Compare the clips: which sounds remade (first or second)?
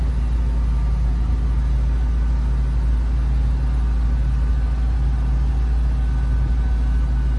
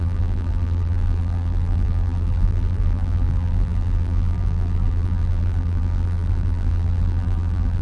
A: second